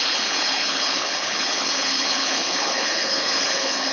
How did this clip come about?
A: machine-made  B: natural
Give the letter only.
A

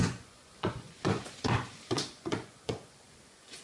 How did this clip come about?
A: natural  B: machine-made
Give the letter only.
B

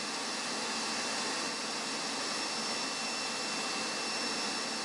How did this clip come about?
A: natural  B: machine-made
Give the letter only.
A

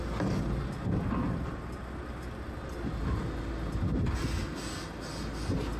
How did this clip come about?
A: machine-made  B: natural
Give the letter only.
B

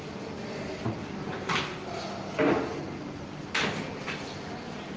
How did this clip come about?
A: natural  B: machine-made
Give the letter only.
A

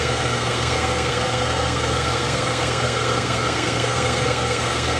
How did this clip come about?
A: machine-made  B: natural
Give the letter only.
A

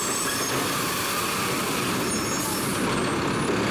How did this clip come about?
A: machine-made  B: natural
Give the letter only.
B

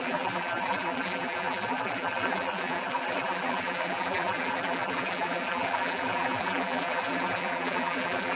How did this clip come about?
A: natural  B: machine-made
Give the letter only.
B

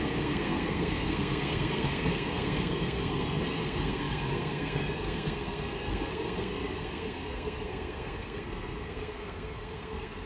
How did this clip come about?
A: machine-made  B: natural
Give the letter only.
A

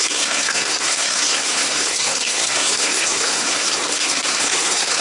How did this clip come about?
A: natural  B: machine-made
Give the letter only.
B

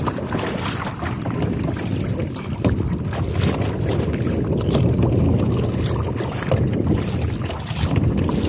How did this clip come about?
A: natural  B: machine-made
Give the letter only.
A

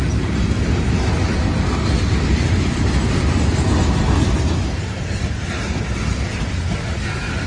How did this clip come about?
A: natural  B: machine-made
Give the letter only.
A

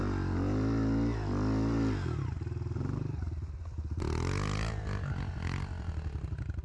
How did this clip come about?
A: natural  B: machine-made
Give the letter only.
A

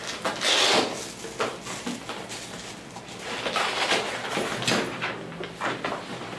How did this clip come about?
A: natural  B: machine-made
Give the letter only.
A